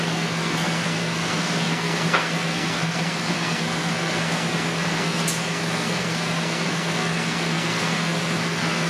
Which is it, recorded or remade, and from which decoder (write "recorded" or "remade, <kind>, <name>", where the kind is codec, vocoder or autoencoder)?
remade, codec, SNAC